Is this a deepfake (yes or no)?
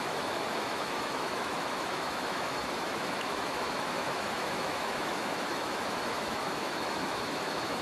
yes